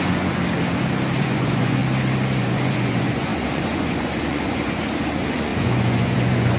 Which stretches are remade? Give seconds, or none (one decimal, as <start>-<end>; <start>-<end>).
0.0-0.4; 1.2-1.8; 2.4-6.6